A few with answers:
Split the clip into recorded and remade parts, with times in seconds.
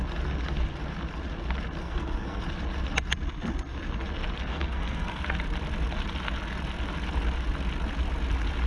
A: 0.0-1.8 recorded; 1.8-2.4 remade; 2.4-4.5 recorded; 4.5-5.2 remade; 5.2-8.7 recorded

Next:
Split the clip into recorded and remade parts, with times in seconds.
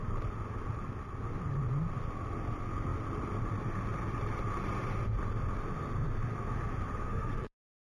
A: 0.0-7.1 recorded; 7.1-7.9 remade